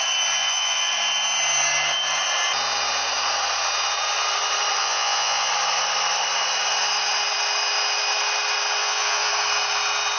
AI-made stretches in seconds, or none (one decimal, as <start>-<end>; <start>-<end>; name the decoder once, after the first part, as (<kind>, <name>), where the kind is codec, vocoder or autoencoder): 0.4-0.9 (vocoder, Vocos); 4.8-5.5; 8.8-9.3